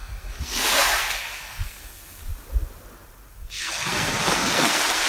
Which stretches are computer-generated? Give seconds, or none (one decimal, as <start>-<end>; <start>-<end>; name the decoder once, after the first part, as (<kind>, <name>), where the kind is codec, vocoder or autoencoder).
0.0-2.2 (codec, SNAC); 3.3-5.1

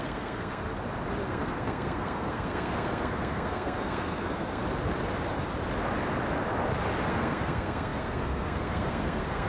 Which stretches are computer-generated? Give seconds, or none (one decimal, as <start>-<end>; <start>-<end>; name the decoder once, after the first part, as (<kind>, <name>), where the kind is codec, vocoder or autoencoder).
0.0-0.7 (codec, SNAC); 1.3-4.6; 7.1-9.5